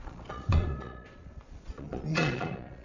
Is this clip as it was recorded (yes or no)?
no